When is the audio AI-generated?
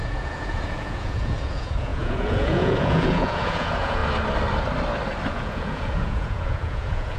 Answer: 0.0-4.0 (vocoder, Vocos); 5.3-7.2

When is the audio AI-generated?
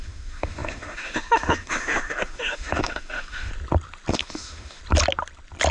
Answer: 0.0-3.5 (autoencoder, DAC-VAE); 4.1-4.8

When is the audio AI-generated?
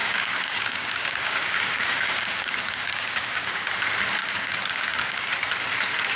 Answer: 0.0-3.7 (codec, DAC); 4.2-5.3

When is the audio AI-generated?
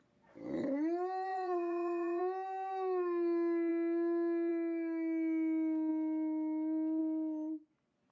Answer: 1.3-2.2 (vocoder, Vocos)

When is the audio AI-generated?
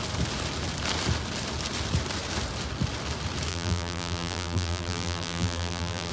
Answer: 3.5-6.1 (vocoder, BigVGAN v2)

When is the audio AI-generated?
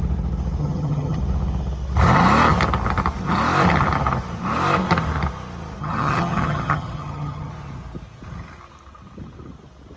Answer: 0.6-1.2 (vocoder, HiFi-GAN); 5.8-7.5